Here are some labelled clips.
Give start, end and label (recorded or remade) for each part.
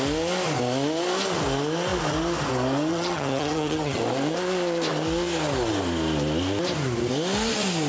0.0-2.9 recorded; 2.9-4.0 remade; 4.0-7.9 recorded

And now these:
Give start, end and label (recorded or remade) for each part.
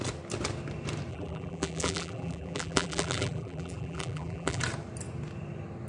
0.0-1.1 recorded; 1.1-4.6 remade; 4.6-5.9 recorded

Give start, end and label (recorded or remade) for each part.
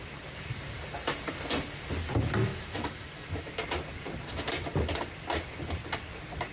0.0-2.5 recorded; 2.5-3.5 remade; 3.5-6.5 recorded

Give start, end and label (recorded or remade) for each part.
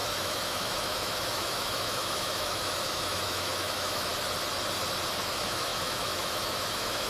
0.0-4.1 remade; 4.1-5.2 recorded; 5.2-7.1 remade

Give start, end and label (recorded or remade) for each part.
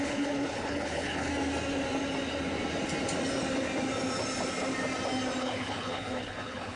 0.0-1.3 remade; 1.3-5.4 recorded; 5.4-6.8 remade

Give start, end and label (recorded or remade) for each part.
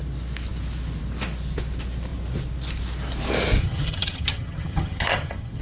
0.0-3.6 recorded; 3.6-5.6 remade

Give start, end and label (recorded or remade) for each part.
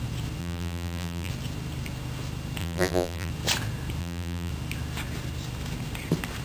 0.0-0.4 recorded; 0.4-1.3 remade; 1.3-2.6 recorded; 2.6-3.3 remade; 3.3-4.0 recorded; 4.0-4.5 remade; 4.5-6.4 recorded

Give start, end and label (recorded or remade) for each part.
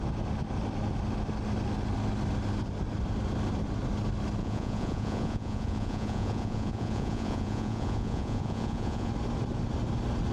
0.0-4.4 recorded; 4.4-9.1 remade; 9.1-10.3 recorded